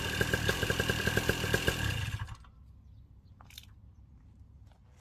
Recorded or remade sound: recorded